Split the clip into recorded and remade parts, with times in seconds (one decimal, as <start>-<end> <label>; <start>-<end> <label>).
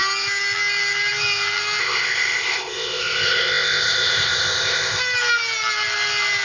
0.0-1.8 recorded; 1.8-5.0 remade; 5.0-6.4 recorded